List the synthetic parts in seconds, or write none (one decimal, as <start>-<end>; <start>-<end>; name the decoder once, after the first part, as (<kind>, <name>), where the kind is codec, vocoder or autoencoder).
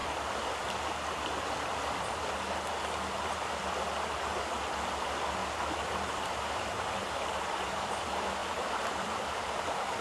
5.4-8.0 (vocoder, BigVGAN v2)